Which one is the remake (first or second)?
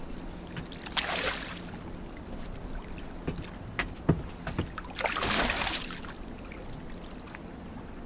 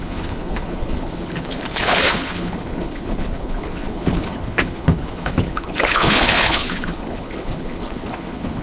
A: second